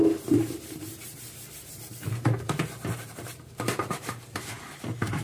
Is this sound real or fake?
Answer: fake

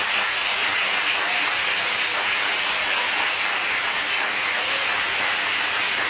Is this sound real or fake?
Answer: real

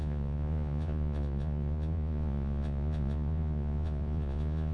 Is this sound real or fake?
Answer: fake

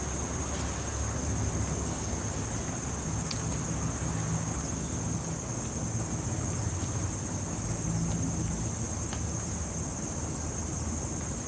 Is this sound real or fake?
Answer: real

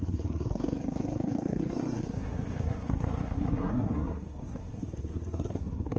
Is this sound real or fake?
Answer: fake